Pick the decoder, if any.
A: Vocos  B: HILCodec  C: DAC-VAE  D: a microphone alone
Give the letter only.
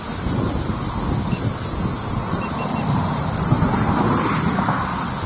D